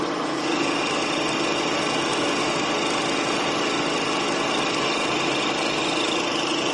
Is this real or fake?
real